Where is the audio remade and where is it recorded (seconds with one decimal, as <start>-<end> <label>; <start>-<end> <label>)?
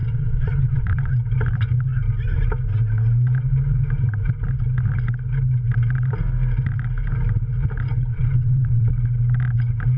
0.0-1.1 remade; 1.1-8.1 recorded; 8.1-8.9 remade; 8.9-10.0 recorded